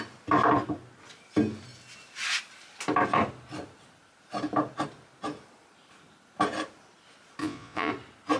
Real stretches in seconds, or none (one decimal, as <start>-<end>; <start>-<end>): 0.0-7.4; 7.9-8.4